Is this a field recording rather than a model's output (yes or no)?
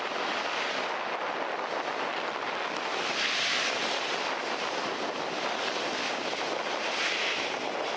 yes